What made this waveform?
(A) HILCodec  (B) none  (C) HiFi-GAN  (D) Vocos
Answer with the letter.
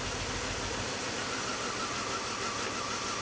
B